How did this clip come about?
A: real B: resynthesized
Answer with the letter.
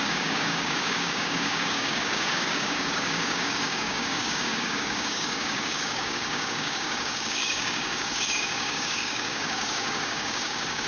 B